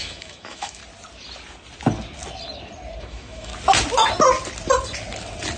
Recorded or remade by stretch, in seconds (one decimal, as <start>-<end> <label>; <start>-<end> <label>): 0.0-0.8 remade; 0.8-3.0 recorded; 3.0-3.5 remade; 3.5-5.6 recorded